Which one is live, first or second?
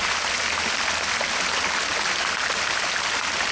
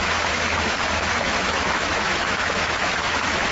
first